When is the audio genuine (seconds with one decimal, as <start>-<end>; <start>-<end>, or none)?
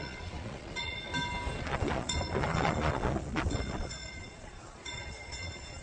1.1-1.6